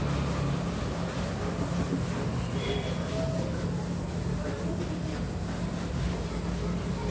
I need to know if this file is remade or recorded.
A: recorded